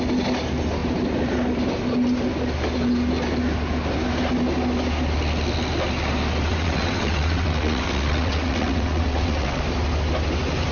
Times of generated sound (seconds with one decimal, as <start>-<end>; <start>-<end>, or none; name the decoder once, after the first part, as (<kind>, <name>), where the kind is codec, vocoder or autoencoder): 6.5-9.6 (vocoder, WaveNeXt)